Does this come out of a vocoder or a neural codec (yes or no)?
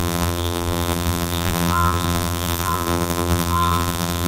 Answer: yes